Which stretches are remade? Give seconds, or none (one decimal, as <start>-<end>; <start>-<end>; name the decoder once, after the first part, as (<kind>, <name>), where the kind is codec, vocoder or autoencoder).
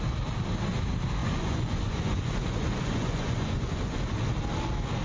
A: 1.2-4.0 (vocoder, Vocos)